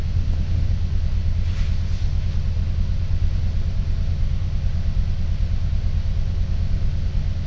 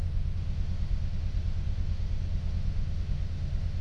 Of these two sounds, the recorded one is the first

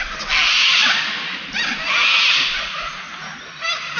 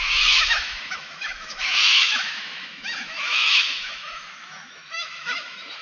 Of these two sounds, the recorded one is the first